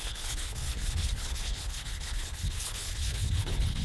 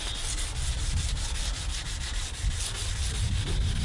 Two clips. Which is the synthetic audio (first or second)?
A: first